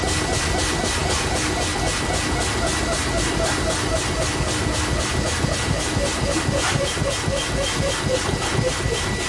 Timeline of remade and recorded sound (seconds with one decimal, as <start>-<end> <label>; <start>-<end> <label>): 0.0-9.3 recorded